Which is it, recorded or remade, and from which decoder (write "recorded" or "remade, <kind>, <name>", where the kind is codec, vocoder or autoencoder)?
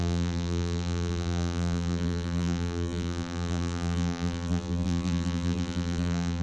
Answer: remade, vocoder, BigVGAN v2